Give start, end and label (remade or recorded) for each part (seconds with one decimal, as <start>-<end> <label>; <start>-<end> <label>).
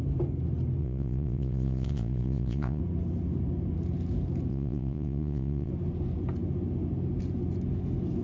0.0-0.8 recorded; 0.8-2.8 remade; 2.8-4.5 recorded; 4.5-5.7 remade; 5.7-8.2 recorded